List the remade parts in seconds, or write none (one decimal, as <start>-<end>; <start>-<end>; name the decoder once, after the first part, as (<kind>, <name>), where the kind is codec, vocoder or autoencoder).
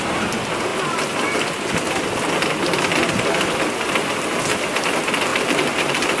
5.3-6.2 (vocoder, BigVGAN v2)